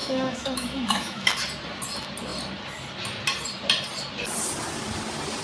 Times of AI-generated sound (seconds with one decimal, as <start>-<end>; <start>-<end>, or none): 0.0-1.3